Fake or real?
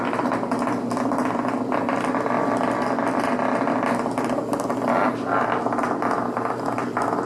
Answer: real